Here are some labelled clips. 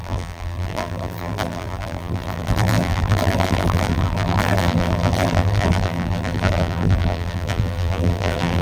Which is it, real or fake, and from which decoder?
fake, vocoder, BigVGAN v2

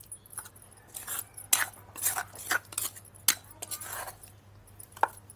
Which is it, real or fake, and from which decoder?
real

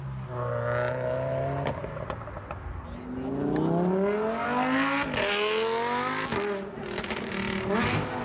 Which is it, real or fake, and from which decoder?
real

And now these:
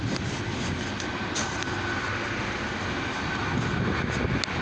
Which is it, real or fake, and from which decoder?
real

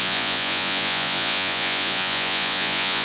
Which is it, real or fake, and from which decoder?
fake, vocoder, Vocos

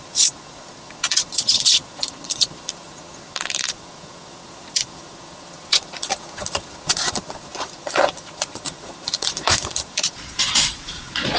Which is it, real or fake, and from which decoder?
fake, vocoder, Vocos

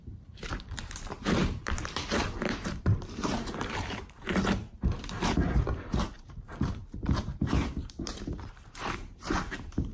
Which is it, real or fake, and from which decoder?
fake, vocoder, BigVGAN v2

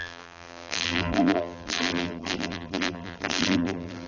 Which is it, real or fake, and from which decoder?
fake, vocoder, BigVGAN v2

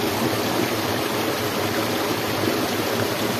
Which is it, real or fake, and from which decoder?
real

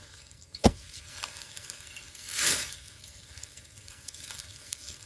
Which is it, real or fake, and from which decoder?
fake, codec, SNAC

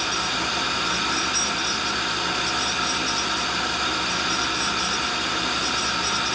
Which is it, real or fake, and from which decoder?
real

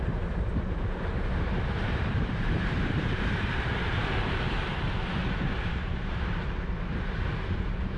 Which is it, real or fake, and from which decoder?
fake, vocoder, BigVGAN v2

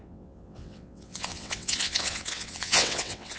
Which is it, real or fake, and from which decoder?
fake, vocoder, WaveNeXt